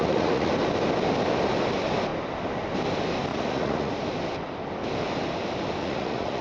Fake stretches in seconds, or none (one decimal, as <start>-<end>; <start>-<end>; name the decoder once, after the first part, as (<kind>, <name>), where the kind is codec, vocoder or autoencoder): 0.0-0.5 (vocoder, Vocos); 3.3-3.9; 5.8-6.4